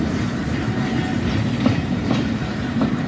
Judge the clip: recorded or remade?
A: recorded